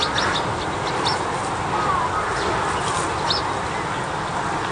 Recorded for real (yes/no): yes